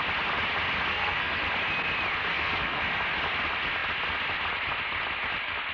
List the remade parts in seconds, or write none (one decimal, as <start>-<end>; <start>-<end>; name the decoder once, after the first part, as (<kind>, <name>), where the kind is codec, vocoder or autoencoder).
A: 0.9-1.4 (codec, SNAC); 2.3-2.8